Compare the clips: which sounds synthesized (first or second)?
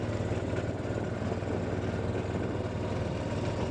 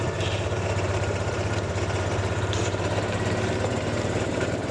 second